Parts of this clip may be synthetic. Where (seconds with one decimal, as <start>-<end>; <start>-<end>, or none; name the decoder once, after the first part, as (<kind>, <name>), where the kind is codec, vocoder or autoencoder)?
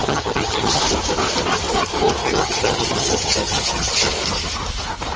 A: 0.0-0.8 (vocoder, HiFi-GAN); 2.2-4.1